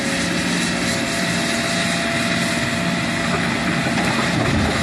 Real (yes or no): yes